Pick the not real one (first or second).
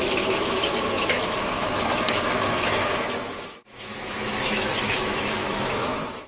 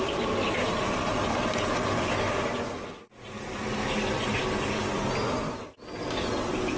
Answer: first